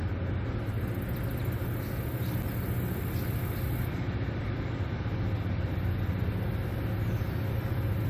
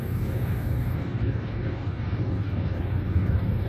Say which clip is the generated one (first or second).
second